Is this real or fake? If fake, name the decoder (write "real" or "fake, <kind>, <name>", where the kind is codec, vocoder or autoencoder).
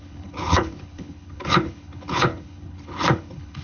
fake, codec, HILCodec